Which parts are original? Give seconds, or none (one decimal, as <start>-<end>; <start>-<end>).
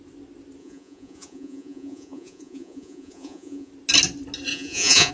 0.0-0.6; 3.7-4.5